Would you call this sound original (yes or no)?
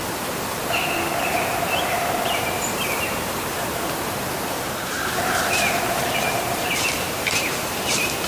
no